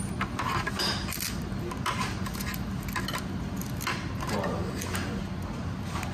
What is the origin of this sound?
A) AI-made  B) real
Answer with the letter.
B